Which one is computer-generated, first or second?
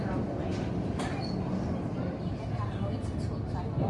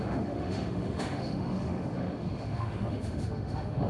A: second